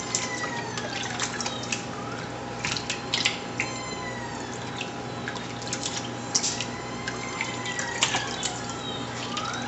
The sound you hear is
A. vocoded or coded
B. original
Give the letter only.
B